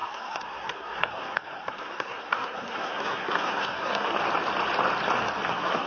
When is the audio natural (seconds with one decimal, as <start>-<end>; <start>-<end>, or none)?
4.1-5.5